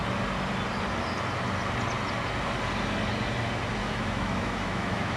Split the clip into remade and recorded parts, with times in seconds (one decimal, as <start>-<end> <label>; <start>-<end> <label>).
0.0-3.8 recorded; 3.8-5.2 remade